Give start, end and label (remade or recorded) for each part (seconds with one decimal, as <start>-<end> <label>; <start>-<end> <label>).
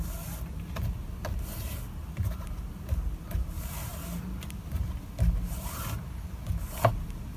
0.0-7.4 recorded